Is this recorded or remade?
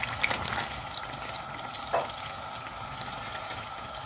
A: recorded